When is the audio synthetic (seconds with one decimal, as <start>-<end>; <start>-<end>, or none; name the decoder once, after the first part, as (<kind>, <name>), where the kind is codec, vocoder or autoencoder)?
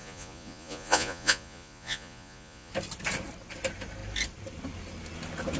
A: 0.0-2.7 (vocoder, Vocos)